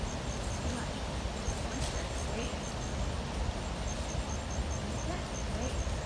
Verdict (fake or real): real